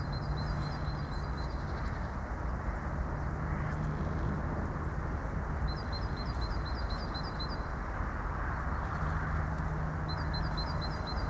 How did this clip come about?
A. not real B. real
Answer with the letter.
B